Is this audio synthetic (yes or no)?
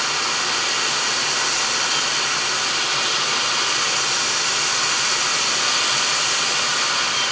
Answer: no